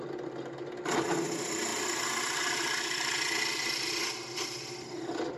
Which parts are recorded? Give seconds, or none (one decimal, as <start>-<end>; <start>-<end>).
0.0-5.4